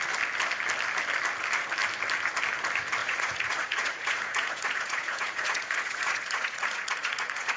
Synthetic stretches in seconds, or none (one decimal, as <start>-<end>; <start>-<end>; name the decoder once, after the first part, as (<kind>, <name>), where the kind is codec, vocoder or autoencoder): 3.0-7.6 (vocoder, Vocos)